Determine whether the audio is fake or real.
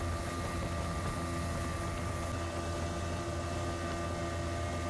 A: real